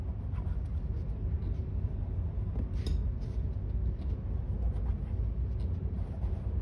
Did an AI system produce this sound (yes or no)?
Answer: no